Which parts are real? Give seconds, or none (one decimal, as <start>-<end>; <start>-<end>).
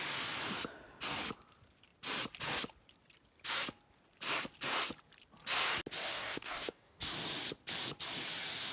0.0-6.1; 7.0-8.7